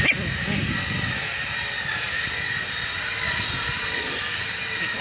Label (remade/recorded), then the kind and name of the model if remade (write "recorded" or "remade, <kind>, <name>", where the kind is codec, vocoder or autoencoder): recorded